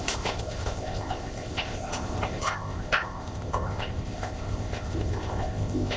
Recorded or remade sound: remade